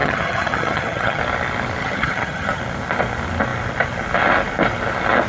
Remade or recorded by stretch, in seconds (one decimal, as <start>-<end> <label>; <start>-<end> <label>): 0.0-1.2 remade; 1.2-1.8 recorded; 1.8-2.6 remade; 2.6-5.3 recorded